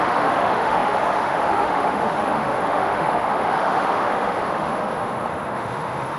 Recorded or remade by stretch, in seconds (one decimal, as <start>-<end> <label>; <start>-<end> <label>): 0.0-6.2 remade

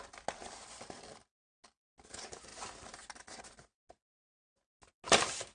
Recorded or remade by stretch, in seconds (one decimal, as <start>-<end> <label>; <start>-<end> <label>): 0.0-5.5 recorded

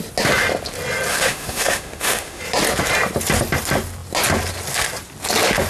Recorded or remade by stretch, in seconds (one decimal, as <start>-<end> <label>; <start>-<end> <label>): 0.0-1.1 recorded; 1.1-2.4 remade; 2.4-5.7 recorded

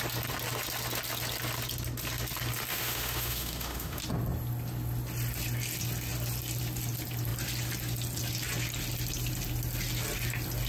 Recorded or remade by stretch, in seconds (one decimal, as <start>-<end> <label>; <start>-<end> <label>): 0.0-2.7 recorded; 2.7-4.0 remade; 4.0-10.7 recorded

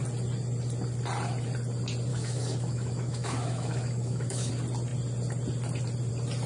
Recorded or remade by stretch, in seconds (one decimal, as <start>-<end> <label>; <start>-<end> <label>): 0.0-2.1 recorded; 2.1-4.5 remade; 4.5-6.5 recorded

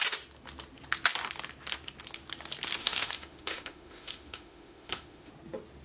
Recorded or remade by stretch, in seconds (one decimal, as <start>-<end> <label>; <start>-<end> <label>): 0.0-2.8 recorded; 2.8-5.3 remade; 5.3-5.8 recorded